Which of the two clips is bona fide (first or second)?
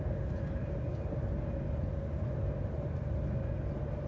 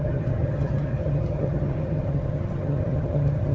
first